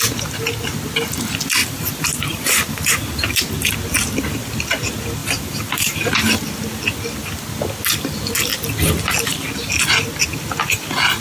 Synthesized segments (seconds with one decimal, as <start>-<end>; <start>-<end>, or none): 1.6-3.4; 5.2-6.1